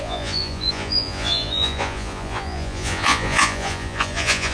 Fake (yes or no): yes